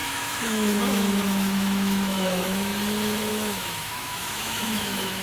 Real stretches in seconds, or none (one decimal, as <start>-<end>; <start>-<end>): 2.7-3.3